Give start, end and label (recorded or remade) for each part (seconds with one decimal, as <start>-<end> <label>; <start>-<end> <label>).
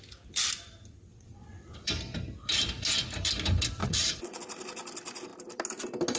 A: 0.0-1.1 recorded; 1.1-1.9 remade; 1.9-3.8 recorded; 3.8-4.4 remade; 4.4-6.2 recorded